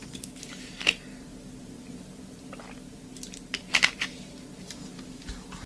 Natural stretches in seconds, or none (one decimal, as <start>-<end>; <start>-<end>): 0.0-5.7